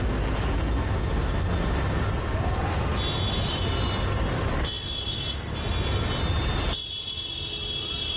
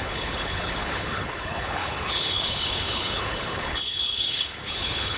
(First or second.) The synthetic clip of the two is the second